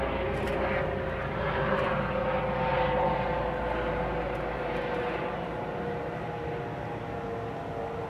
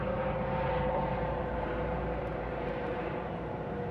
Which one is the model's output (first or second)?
second